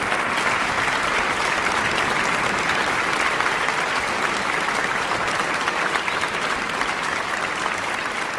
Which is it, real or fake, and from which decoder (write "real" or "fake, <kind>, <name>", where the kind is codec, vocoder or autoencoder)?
real